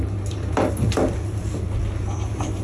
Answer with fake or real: fake